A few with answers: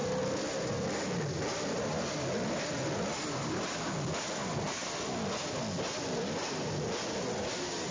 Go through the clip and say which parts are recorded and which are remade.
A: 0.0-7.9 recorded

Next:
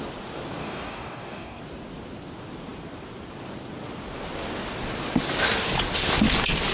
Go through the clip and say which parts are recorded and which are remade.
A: 0.0-0.6 recorded; 0.6-1.6 remade; 1.6-6.7 recorded

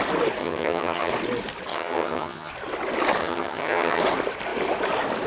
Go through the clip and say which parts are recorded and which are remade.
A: 0.0-0.4 recorded; 0.4-1.1 remade; 1.1-1.7 recorded; 1.7-2.5 remade; 2.5-3.2 recorded; 3.2-4.0 remade; 4.0-5.3 recorded